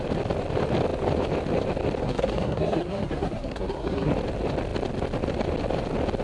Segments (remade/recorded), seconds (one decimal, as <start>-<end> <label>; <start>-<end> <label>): 0.0-2.0 recorded; 2.0-4.1 remade; 4.1-6.2 recorded